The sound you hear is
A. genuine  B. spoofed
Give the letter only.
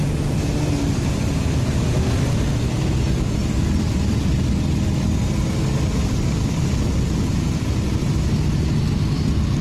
A